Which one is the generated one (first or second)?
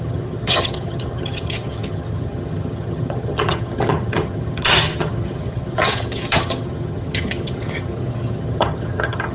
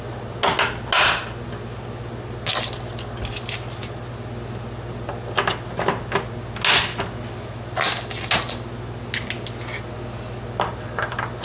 first